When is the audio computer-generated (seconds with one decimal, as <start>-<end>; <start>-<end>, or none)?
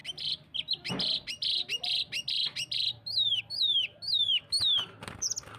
none